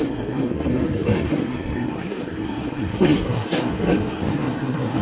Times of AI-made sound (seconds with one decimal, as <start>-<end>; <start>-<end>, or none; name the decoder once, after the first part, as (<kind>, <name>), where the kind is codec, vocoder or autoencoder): 0.0-5.0 (codec, SNAC)